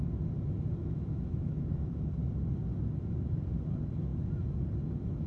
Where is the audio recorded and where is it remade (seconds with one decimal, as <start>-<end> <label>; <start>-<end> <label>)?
0.0-0.8 recorded; 0.8-2.0 remade; 2.0-5.3 recorded